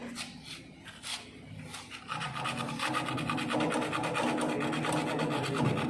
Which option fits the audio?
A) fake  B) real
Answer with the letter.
B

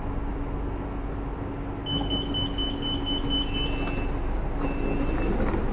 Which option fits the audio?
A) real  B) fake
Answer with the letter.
A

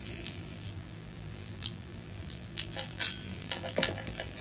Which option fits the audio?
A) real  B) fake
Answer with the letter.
B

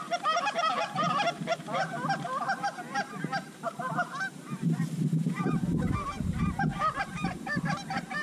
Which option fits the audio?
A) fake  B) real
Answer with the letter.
A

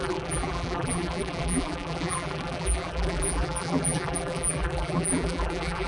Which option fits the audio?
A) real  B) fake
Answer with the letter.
B